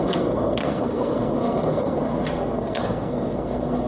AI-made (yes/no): yes